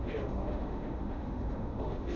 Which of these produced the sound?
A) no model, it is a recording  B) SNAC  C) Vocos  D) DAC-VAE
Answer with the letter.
D